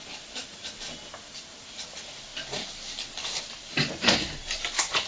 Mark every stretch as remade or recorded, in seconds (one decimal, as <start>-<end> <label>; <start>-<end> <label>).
0.0-5.1 recorded